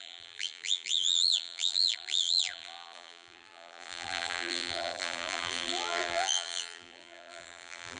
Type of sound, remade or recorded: remade